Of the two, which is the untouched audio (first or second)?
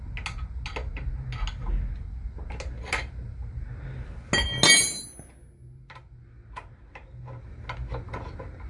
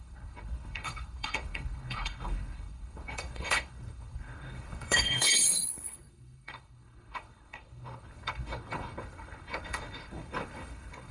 first